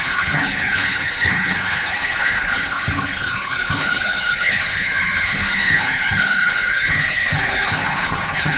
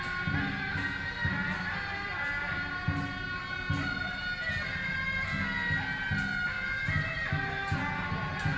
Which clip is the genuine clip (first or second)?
second